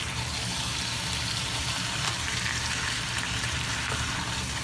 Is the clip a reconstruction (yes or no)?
yes